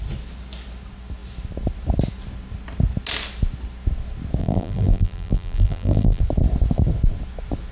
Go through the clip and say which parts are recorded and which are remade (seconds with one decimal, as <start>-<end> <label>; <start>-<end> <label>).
0.0-4.4 recorded; 4.4-6.2 remade; 6.2-7.7 recorded